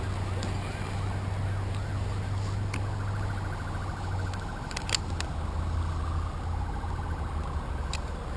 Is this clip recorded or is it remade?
recorded